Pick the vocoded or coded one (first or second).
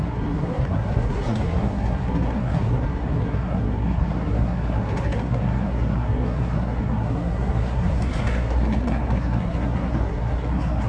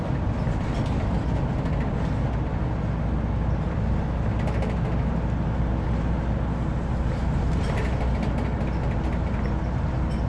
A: first